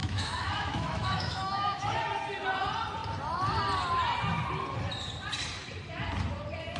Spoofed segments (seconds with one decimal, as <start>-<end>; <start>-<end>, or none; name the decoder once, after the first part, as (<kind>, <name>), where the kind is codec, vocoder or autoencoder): 0.0-2.0 (autoencoder, DAC-VAE)